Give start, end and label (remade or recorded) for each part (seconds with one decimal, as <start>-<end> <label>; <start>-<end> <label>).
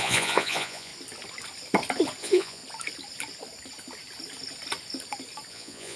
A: 0.0-0.9 remade; 0.9-2.2 recorded; 2.2-2.6 remade; 2.6-5.5 recorded; 5.5-6.0 remade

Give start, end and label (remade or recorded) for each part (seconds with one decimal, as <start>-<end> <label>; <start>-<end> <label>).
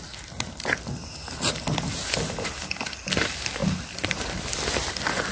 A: 0.0-5.3 recorded